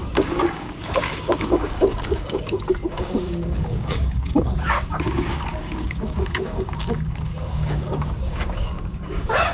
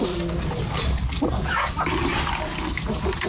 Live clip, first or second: second